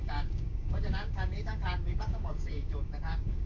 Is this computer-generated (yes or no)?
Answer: yes